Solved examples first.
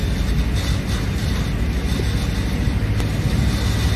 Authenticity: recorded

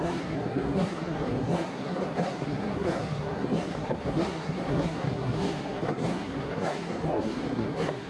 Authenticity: remade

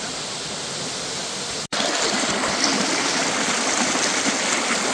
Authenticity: recorded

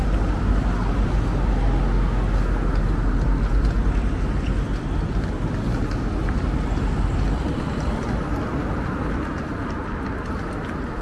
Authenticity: recorded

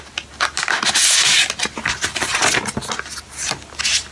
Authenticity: recorded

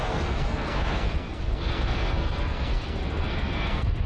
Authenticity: remade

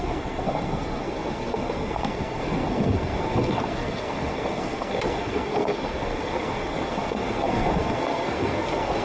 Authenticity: remade